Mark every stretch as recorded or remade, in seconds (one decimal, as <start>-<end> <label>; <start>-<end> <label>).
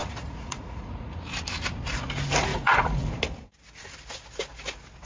0.0-1.2 remade; 1.2-2.5 recorded; 2.5-3.1 remade; 3.1-5.1 recorded